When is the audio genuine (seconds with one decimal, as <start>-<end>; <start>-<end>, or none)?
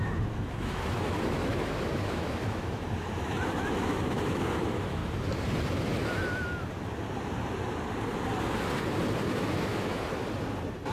5.0-9.3; 9.9-10.9